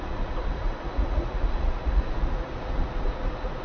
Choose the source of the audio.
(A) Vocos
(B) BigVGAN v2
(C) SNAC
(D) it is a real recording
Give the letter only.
A